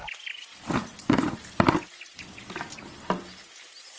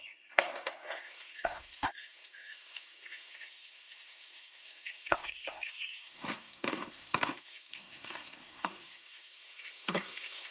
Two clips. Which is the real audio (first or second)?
first